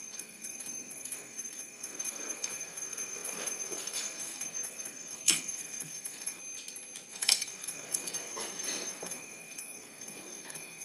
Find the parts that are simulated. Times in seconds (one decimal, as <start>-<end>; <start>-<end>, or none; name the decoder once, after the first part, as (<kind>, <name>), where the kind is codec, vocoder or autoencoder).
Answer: 0.0-6.4 (codec, SNAC); 7.1-10.8